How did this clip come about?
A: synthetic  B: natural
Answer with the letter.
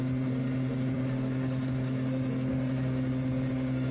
A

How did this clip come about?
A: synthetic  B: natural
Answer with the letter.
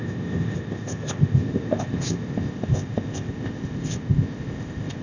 A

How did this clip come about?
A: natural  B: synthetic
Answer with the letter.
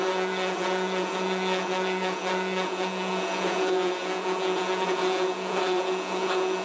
B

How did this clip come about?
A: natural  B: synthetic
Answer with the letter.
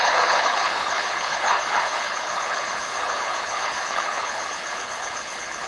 B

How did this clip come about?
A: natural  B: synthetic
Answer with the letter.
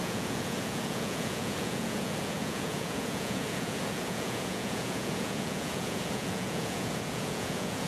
B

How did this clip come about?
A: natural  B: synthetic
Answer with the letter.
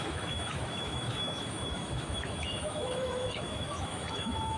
B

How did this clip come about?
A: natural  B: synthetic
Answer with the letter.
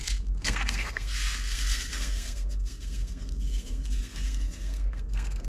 B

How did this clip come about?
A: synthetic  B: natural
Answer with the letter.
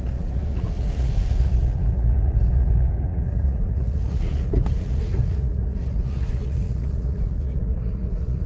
A